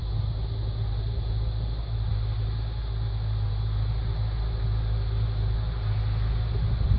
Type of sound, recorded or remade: recorded